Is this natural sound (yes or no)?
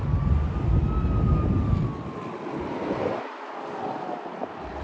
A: yes